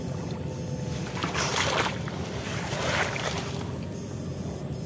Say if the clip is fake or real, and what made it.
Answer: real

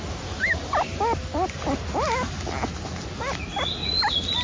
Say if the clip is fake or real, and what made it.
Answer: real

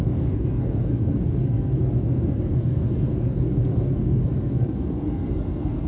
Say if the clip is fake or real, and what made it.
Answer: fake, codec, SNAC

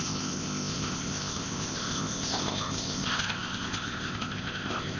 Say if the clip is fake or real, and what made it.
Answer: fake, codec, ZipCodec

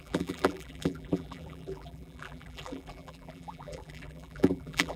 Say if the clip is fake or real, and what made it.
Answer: fake, vocoder, BigVGAN v2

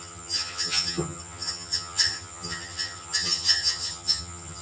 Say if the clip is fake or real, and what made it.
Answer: fake, vocoder, HiFi-GAN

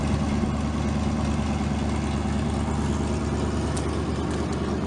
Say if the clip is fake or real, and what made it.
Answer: real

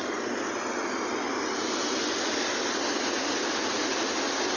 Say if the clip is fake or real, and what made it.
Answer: real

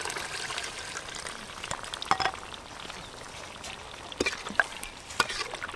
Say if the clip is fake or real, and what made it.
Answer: real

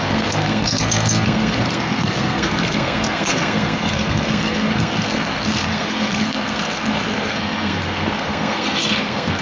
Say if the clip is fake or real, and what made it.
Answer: fake, codec, SNAC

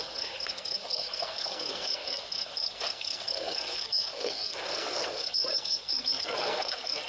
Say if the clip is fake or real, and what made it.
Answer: fake, codec, SNAC